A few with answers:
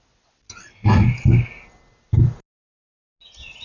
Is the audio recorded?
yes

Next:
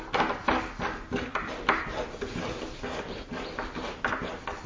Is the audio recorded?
yes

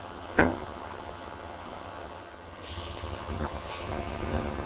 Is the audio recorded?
no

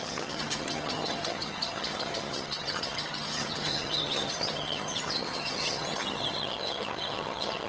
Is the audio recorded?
no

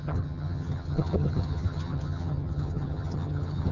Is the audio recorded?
no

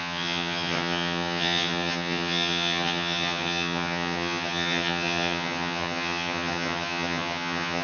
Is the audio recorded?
no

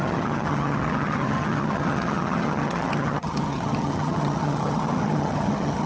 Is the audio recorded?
no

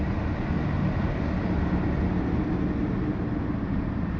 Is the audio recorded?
yes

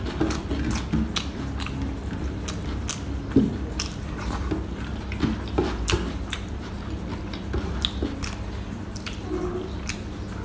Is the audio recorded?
yes